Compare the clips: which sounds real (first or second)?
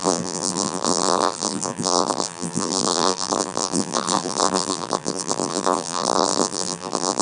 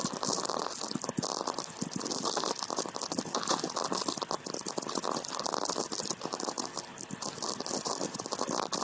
second